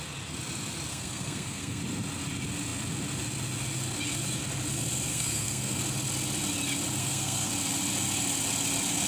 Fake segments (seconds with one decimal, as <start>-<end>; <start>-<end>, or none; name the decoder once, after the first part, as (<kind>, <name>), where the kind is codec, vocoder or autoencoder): 0.9-1.8 (codec, SNAC); 5.1-5.8; 7.0-7.5